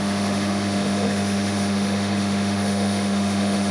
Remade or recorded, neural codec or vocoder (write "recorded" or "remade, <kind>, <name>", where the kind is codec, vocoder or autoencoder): remade, autoencoder, DAC-VAE